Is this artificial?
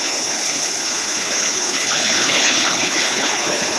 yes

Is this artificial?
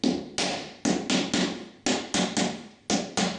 no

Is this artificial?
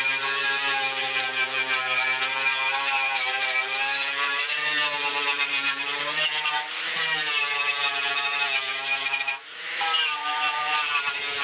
yes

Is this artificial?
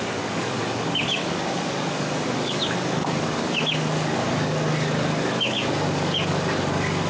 yes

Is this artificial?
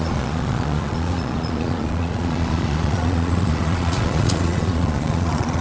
yes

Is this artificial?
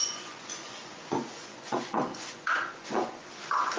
yes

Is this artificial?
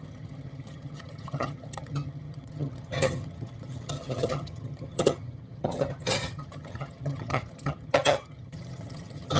yes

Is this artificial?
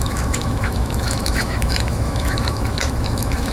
yes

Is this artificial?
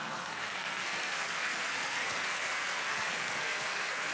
yes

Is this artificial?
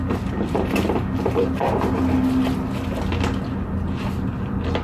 no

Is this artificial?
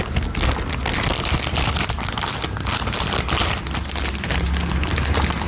no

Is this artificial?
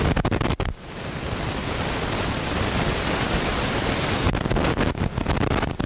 no